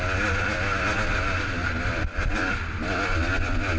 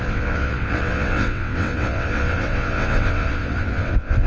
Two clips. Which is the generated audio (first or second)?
second